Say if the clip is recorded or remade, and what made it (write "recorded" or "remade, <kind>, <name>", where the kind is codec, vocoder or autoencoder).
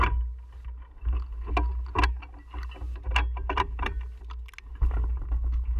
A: recorded